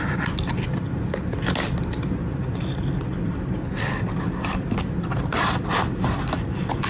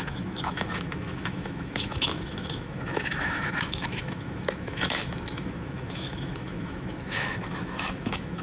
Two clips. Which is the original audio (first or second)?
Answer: first